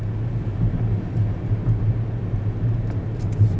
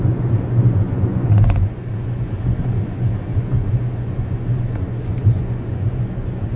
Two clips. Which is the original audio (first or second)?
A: first